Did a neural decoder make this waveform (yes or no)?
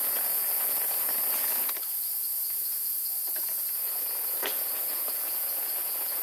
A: yes